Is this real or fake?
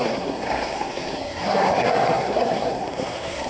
fake